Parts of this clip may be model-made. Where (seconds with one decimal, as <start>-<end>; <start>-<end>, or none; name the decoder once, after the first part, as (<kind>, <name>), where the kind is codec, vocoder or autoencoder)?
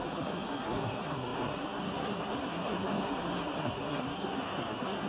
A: 0.0-5.1 (codec, SNAC)